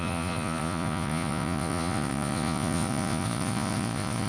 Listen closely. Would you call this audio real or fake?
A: fake